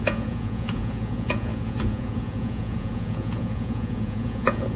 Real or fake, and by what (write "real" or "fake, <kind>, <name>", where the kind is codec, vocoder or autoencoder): fake, vocoder, Vocos